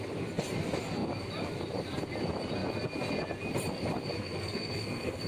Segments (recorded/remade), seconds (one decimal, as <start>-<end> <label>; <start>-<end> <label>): 0.0-4.2 recorded; 4.2-5.3 remade